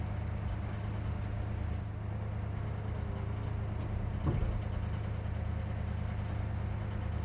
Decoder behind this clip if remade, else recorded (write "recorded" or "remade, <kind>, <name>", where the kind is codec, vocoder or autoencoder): recorded